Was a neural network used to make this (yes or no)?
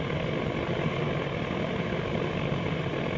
no